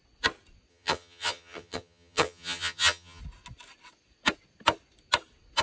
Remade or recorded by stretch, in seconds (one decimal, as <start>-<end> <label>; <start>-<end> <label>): 0.0-0.7 recorded; 0.7-3.2 remade; 3.2-5.6 recorded